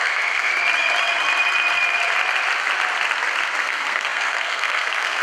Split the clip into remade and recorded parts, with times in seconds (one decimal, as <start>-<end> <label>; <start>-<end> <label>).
0.0-0.5 remade; 0.5-3.6 recorded; 3.6-5.2 remade